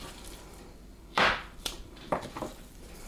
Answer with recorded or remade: remade